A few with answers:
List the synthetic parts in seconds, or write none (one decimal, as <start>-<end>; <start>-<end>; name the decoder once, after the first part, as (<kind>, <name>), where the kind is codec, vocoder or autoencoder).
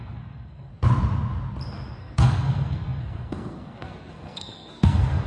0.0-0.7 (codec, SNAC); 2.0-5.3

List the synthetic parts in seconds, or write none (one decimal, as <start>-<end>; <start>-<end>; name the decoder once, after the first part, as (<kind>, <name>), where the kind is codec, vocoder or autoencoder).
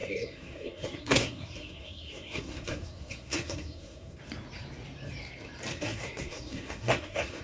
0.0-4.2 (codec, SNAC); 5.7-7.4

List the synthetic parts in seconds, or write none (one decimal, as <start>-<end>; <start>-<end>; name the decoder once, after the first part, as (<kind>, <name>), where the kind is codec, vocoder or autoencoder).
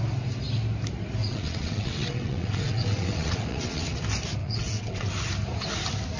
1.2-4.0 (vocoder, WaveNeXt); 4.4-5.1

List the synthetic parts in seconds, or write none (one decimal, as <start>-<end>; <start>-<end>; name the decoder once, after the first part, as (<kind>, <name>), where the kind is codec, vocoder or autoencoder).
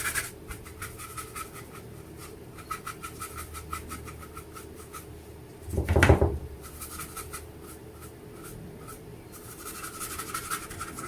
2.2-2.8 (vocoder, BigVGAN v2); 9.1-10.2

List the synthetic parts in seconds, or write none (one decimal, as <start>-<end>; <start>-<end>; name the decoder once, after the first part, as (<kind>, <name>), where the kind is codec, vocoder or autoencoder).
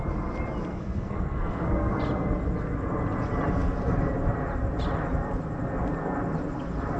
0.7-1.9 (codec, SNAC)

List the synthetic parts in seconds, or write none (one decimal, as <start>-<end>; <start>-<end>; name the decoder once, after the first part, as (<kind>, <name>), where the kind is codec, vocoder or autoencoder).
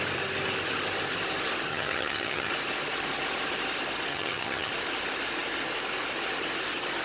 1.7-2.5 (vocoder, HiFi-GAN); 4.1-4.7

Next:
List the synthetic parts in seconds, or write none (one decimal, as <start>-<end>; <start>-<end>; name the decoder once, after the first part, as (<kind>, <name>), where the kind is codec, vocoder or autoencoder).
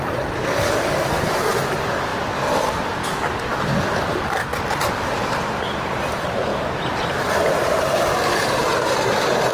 0.0-2.1 (vocoder, BigVGAN v2); 4.1-4.5; 5.2-6.5; 7.3-9.5